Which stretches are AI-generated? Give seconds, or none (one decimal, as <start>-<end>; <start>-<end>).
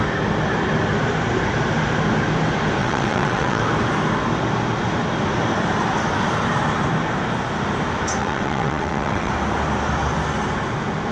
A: 2.8-3.6; 8.2-9.3